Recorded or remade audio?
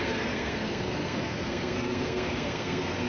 remade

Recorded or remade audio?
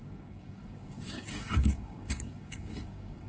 remade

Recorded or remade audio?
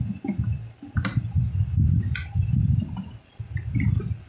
recorded